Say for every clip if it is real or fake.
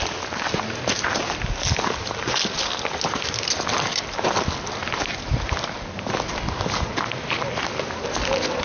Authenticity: real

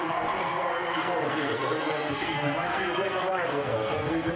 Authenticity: fake